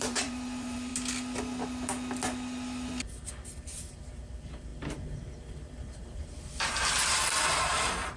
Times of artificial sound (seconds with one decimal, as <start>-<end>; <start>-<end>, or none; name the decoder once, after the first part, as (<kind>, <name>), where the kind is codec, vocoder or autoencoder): 0.0-0.9 (vocoder, BigVGAN v2); 3.9-8.2